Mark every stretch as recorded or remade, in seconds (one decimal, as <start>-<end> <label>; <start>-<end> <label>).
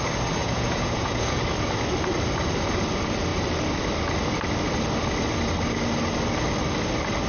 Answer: 0.0-0.4 recorded; 0.4-1.4 remade; 1.4-7.3 recorded